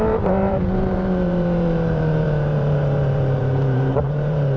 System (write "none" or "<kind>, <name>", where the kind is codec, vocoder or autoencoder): vocoder, BigVGAN v2